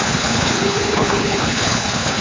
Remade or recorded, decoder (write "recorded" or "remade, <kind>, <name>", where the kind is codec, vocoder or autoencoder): remade, codec, HILCodec